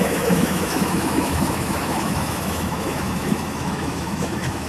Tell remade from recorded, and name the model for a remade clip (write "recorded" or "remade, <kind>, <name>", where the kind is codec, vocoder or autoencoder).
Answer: remade, autoencoder, DAC-VAE